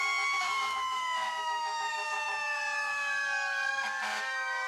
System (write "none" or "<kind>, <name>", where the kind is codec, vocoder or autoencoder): codec, DAC